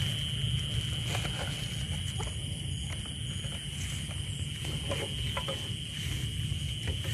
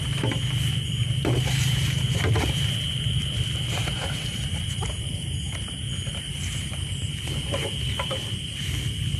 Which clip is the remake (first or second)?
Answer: second